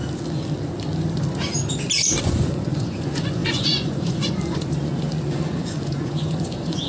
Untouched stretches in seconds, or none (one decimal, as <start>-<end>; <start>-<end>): 0.0-2.2